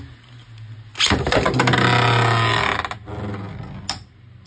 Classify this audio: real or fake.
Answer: real